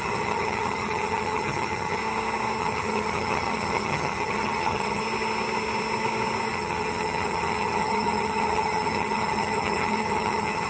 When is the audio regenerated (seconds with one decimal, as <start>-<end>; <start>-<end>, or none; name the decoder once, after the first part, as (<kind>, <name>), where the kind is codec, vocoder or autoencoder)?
0.0-2.0 (vocoder, HiFi-GAN); 2.6-5.0; 6.5-10.7